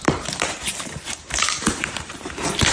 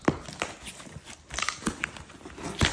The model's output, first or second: first